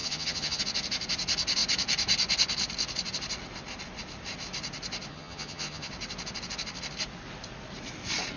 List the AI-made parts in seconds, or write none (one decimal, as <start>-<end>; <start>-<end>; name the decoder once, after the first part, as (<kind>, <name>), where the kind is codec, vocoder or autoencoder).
0.0-0.6 (vocoder, HiFi-GAN); 5.1-5.9